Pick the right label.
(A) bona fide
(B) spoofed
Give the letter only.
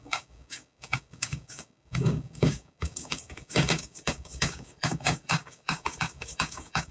B